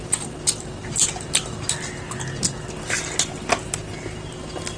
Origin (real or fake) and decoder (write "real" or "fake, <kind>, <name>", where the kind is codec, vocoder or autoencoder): real